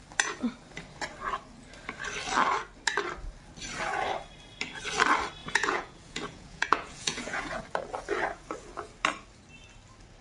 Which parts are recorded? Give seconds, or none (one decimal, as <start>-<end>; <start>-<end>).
0.0-5.4; 7.6-10.2